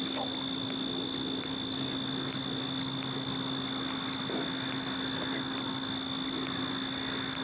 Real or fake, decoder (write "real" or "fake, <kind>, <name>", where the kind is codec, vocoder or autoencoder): real